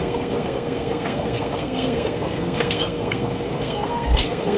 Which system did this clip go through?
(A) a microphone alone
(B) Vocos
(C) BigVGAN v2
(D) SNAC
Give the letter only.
D